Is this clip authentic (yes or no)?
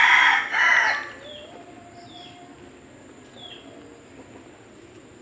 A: yes